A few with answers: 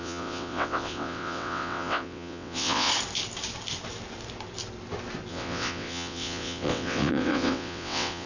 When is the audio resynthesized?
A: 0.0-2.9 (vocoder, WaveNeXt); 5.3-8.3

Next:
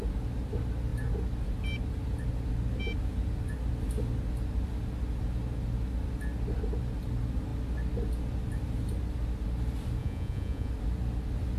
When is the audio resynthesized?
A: 10.0-10.7 (vocoder, Vocos)

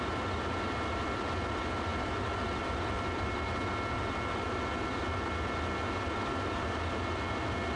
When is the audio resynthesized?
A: none

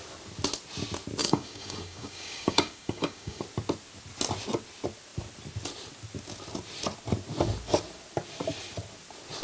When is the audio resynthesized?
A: 1.2-3.4 (codec, DAC)

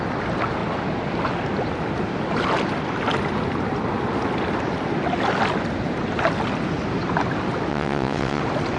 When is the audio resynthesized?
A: 7.7-8.4 (vocoder, WaveNeXt)

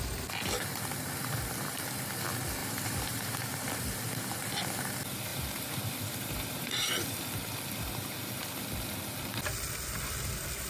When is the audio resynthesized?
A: 2.6-3.7 (vocoder, BigVGAN v2); 5.3-6.9

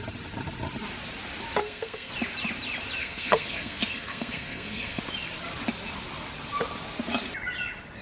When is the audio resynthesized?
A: 1.6-2.1 (codec, SNAC); 3.0-5.0

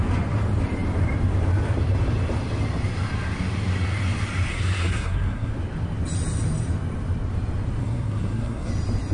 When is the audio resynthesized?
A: 4.5-5.5 (codec, SNAC); 7.8-8.7